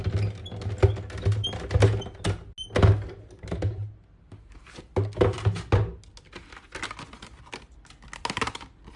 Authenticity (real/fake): real